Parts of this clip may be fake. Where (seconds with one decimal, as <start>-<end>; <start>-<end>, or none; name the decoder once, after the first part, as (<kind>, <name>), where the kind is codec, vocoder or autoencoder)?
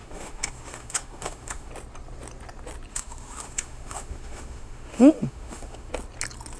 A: 0.0-1.7 (autoencoder, DAC-VAE); 2.9-5.9